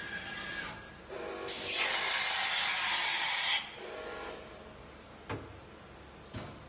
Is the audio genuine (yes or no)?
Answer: yes